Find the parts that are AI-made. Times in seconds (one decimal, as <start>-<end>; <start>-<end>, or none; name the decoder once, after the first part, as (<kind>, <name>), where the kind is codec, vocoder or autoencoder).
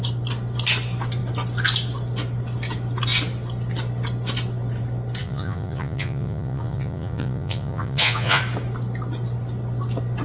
5.2-8.4 (vocoder, Vocos)